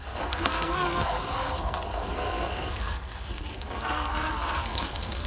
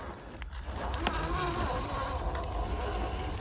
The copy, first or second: first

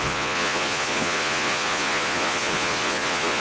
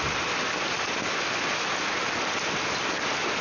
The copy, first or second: first